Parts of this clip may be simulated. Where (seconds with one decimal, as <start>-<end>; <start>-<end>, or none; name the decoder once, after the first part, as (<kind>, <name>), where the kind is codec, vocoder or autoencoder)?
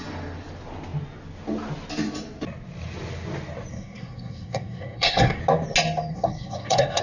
3.7-5.4 (codec, SNAC); 6.1-7.0